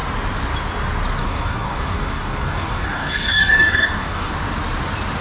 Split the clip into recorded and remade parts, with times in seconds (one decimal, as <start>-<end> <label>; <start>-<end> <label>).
0.0-1.2 recorded; 1.2-4.3 remade; 4.3-5.2 recorded